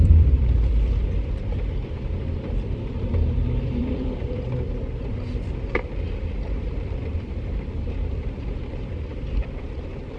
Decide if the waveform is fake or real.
fake